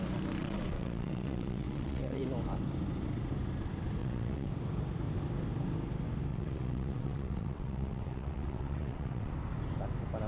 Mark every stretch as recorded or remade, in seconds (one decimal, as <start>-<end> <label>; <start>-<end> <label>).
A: 0.0-0.4 recorded; 0.4-2.2 remade; 2.2-4.0 recorded; 4.0-4.5 remade; 4.5-6.3 recorded; 6.3-9.3 remade; 9.3-10.3 recorded